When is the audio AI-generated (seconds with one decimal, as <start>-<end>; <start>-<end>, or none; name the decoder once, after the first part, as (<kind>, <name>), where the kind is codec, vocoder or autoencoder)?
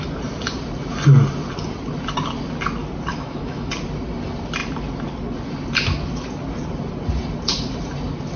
3.1-3.7 (autoencoder, DAC-VAE)